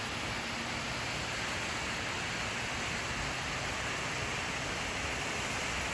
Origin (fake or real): real